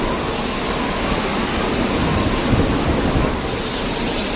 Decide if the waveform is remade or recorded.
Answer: recorded